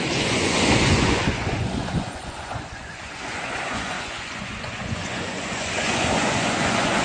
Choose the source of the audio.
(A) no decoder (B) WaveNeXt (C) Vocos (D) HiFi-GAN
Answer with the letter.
C